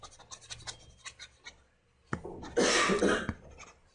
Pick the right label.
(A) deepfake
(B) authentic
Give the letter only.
B